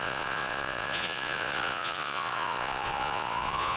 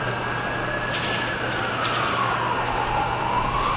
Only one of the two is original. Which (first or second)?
second